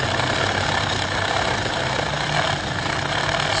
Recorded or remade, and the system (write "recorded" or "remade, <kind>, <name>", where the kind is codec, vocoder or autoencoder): recorded